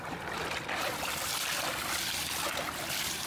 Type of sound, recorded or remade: recorded